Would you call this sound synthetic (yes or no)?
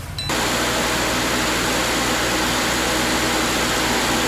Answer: no